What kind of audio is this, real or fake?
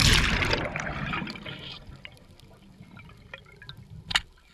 real